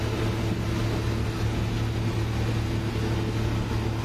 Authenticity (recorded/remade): recorded